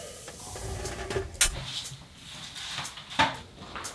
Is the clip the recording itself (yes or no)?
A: yes